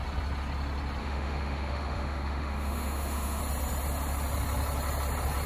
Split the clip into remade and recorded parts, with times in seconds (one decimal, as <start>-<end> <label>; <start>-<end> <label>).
0.0-1.0 recorded; 1.0-3.4 remade; 3.4-5.5 recorded